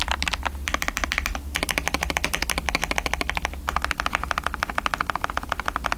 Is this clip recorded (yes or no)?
yes